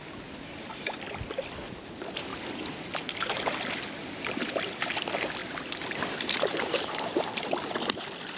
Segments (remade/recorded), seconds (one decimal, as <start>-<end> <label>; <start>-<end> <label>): 0.0-5.4 recorded; 5.4-7.4 remade; 7.4-8.4 recorded